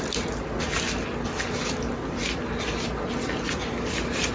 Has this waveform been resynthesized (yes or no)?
no